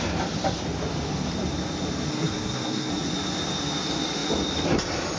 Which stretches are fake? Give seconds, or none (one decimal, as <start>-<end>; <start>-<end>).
2.1-2.9